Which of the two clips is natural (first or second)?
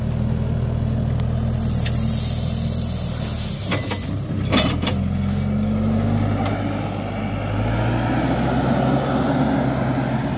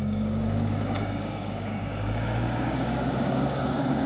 first